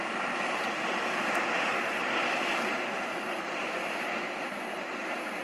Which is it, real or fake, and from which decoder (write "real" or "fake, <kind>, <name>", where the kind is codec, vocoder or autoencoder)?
real